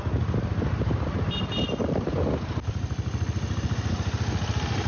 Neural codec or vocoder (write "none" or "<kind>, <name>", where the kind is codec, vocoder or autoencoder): none